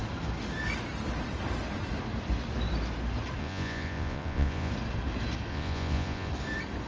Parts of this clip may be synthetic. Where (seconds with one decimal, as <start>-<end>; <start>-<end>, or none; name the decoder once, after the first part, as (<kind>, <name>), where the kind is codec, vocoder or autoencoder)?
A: 3.4-4.7 (vocoder, Vocos); 5.5-6.3

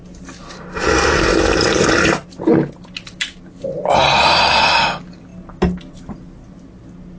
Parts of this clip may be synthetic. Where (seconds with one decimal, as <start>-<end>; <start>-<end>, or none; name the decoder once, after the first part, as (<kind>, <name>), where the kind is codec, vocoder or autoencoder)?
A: none

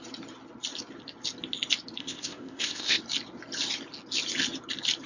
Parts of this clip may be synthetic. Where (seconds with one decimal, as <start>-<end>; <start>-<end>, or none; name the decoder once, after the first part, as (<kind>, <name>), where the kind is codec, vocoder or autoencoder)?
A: 2.0-3.0 (codec, ZipCodec)

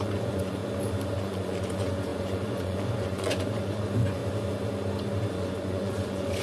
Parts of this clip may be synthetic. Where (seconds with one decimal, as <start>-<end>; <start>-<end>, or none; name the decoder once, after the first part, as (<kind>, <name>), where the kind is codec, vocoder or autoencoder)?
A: 0.0-0.6 (vocoder, Vocos); 1.2-4.2; 5.3-6.4

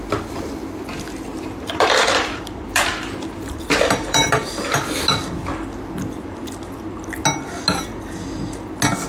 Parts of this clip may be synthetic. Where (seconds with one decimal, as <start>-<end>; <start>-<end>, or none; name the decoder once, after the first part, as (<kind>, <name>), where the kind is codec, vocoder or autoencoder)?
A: 1.3-4.8 (vocoder, BigVGAN v2)

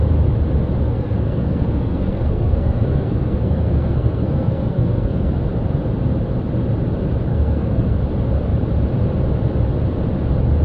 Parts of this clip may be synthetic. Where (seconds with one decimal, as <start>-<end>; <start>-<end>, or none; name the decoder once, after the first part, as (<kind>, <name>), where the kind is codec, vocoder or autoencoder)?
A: 0.8-5.3 (codec, SNAC); 7.3-8.0

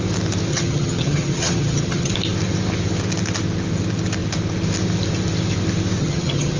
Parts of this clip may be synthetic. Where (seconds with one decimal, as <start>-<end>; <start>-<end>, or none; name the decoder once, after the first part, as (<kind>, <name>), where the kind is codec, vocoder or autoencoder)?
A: 0.5-2.1 (vocoder, HiFi-GAN); 6.0-6.6